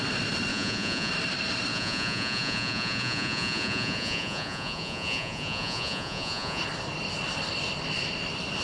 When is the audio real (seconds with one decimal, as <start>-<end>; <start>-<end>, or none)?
0.0-0.5; 1.1-1.7; 6.6-8.6